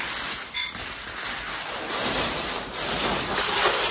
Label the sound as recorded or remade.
recorded